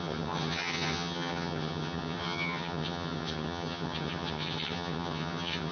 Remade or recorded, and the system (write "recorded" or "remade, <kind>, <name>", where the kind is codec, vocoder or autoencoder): remade, vocoder, HiFi-GAN